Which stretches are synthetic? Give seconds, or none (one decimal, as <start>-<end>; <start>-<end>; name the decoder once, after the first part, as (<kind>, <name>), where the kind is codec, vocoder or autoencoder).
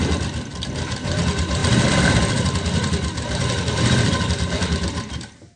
0.5-1.2 (vocoder, BigVGAN v2); 1.6-5.0